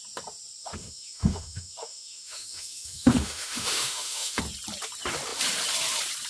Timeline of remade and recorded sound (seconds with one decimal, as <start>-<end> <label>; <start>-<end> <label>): 0.0-0.6 recorded; 0.6-4.4 remade; 4.4-6.3 recorded